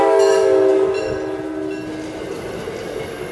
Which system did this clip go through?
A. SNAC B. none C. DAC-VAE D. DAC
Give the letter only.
B